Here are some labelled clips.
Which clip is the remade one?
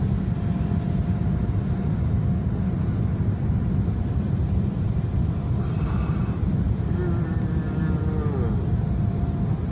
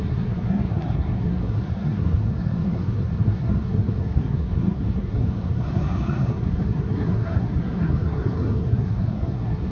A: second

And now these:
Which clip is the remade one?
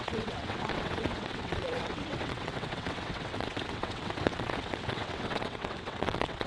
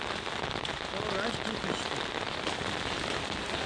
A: first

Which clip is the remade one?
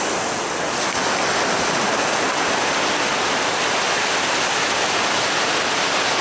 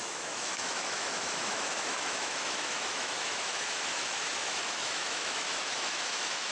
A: second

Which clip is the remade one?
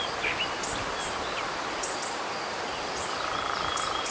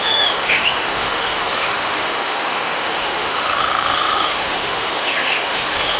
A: second